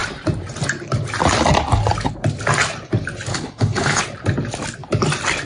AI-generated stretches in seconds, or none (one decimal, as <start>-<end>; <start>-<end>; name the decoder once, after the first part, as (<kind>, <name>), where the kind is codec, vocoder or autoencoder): 3.3-4.0 (codec, HILCodec)